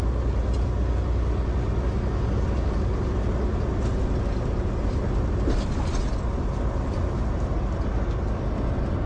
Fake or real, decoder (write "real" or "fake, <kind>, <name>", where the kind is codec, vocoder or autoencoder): real